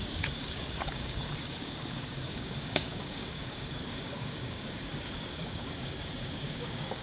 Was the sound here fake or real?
fake